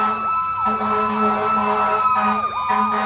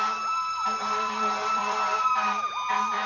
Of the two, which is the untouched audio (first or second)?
first